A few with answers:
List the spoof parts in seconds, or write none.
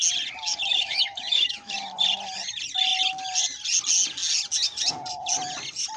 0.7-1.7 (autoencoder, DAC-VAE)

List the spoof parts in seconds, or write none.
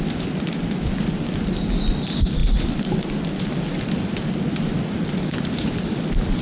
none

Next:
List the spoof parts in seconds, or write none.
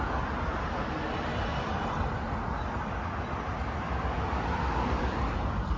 none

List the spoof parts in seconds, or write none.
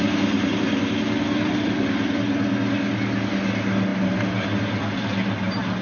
none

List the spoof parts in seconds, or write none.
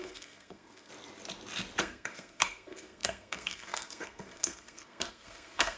0.0-0.9 (codec, SNAC); 1.8-5.8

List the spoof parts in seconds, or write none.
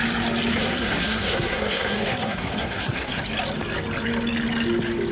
0.5-3.2 (codec, SNAC)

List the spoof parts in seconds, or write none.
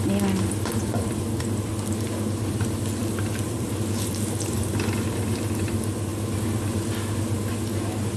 0.8-1.7 (vocoder, BigVGAN v2); 3.0-4.7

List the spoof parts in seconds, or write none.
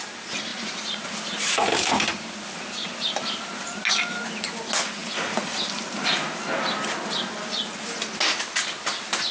none